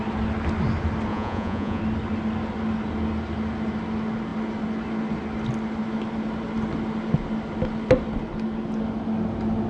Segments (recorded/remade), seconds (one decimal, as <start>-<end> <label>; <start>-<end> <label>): 0.0-1.1 recorded; 1.1-1.8 remade; 1.8-9.7 recorded